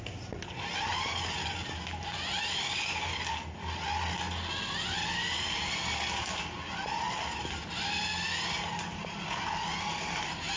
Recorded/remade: recorded